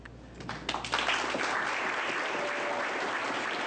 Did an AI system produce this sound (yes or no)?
no